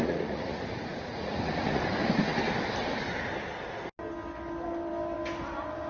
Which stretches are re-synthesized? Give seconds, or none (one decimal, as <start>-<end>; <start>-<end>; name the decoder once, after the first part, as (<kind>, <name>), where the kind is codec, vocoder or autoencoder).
0.0-1.8 (vocoder, Vocos)